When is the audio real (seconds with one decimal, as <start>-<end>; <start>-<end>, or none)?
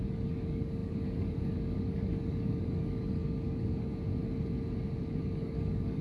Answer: 3.9-5.2